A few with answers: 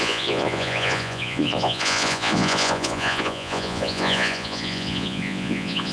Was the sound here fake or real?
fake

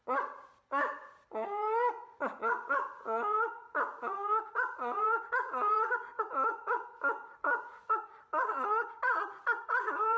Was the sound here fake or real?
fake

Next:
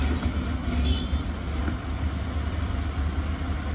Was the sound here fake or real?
real